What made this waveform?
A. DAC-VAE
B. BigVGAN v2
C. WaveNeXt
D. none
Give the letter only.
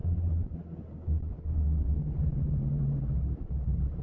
D